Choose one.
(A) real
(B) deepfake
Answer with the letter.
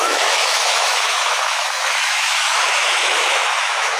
B